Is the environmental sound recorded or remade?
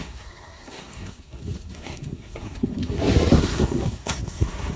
remade